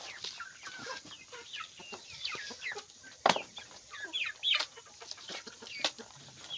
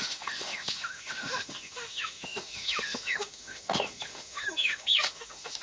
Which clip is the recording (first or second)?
first